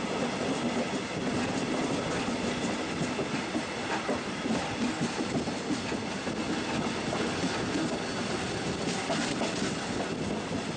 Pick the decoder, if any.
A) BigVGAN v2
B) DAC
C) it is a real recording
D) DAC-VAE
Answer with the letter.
C